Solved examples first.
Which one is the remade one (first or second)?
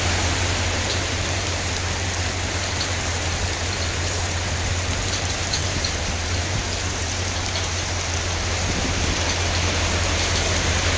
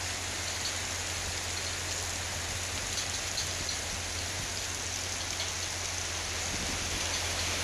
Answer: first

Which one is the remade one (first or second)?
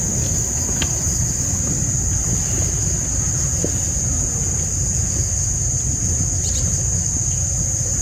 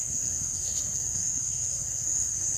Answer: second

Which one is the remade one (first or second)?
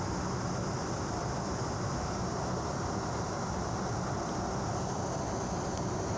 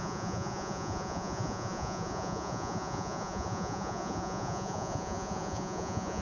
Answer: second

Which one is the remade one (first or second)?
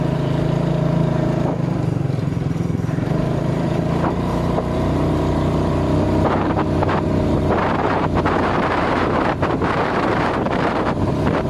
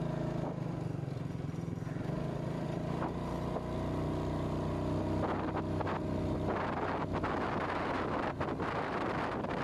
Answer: first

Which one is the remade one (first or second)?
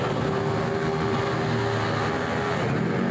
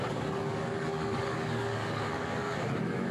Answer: second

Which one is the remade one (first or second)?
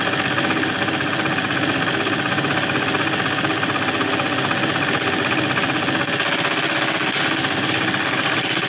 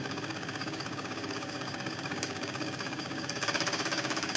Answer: second